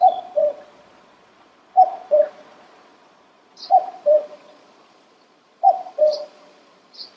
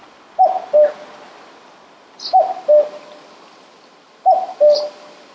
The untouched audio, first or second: second